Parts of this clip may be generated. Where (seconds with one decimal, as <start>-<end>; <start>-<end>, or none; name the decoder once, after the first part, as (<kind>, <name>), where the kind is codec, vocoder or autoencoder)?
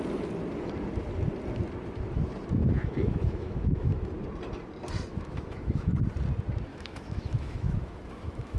2.6-3.9 (autoencoder, DAC-VAE); 5.1-5.9; 6.7-8.6